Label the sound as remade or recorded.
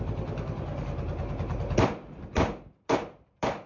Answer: recorded